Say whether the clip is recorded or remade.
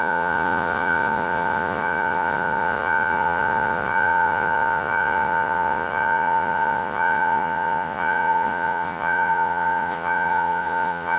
remade